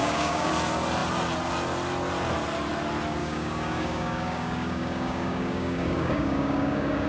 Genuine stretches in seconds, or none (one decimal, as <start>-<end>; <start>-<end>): 0.5-3.2